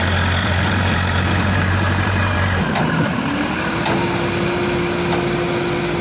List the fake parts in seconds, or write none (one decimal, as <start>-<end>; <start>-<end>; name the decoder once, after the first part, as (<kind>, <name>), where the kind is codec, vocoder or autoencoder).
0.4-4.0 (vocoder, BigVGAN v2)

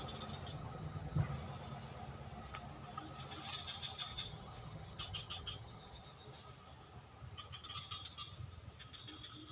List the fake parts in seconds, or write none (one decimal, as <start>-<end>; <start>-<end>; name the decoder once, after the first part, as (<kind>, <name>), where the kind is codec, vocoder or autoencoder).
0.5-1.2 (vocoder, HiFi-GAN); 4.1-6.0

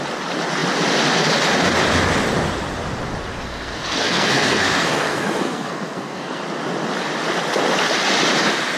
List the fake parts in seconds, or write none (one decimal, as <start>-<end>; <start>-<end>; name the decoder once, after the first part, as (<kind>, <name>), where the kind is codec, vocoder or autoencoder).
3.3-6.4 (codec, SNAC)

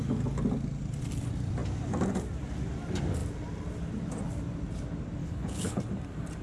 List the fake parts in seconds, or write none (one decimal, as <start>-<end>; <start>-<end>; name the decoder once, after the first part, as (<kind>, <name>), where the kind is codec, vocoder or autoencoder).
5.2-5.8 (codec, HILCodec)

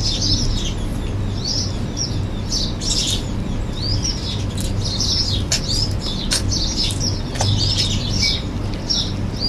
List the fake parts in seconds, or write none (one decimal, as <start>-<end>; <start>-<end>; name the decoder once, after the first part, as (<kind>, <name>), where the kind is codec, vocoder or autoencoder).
none

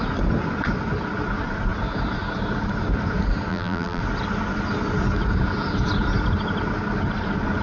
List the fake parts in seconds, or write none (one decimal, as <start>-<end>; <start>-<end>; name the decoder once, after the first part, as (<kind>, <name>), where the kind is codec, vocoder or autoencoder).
3.5-4.0 (vocoder, BigVGAN v2)

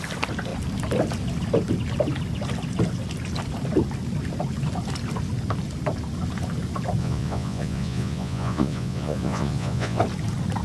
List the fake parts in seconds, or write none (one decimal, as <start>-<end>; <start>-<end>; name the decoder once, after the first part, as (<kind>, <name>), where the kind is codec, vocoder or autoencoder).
7.0-10.0 (vocoder, Vocos)